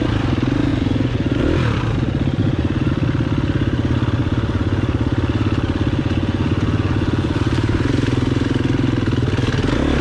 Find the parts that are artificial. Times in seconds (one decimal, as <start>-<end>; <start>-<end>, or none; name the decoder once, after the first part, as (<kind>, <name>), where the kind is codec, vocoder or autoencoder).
0.7-1.4 (vocoder, Vocos); 2.4-2.9; 4.2-4.8; 6.0-7.4